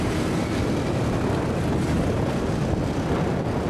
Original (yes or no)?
yes